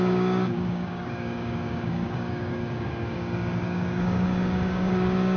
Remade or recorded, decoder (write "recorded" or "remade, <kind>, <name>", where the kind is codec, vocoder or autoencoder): remade, codec, DAC